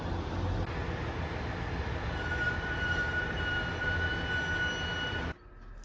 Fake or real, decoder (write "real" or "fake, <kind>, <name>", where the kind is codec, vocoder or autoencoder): real